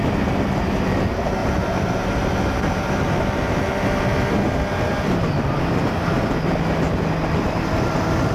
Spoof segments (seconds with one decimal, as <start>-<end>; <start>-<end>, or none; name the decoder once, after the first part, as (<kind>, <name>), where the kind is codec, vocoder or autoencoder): 1.4-3.7 (vocoder, BigVGAN v2)

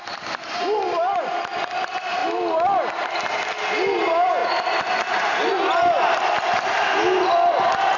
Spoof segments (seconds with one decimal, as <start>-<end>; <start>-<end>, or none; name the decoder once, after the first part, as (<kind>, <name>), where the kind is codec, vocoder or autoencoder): none

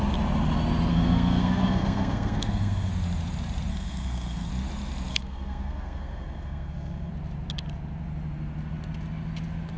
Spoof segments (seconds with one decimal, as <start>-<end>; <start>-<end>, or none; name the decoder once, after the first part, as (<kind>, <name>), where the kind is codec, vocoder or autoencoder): 0.9-2.9 (codec, SNAC); 3.7-4.5; 5.1-7.1

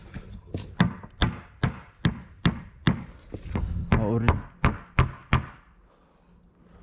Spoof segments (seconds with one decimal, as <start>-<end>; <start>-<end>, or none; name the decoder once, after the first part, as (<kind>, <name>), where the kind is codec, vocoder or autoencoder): 0.0-0.5 (codec, HILCodec)